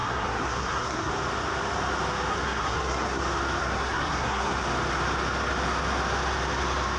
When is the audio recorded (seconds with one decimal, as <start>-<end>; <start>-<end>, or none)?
1.1-2.3; 3.2-3.6; 4.5-7.0